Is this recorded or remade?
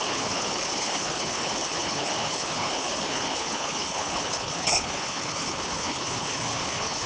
remade